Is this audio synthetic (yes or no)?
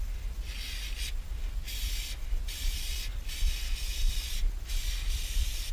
no